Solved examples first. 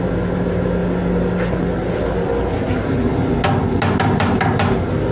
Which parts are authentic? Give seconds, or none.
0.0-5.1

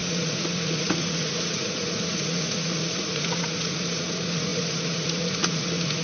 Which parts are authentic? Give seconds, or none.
none

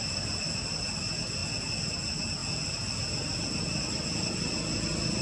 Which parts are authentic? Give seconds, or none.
0.0-5.2

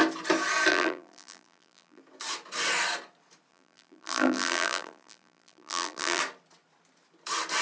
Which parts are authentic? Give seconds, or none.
0.0-0.7; 2.0-3.5; 6.2-7.6

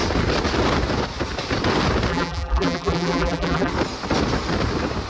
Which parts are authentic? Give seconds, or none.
0.0-2.1; 3.7-5.1

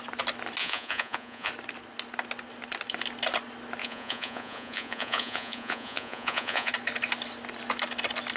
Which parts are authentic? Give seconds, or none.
0.0-0.6; 1.5-3.8; 6.7-8.4

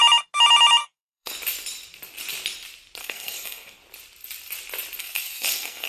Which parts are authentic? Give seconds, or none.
0.0-0.8; 1.3-3.0; 3.8-5.0

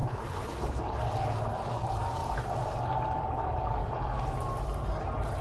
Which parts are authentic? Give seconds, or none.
0.8-5.4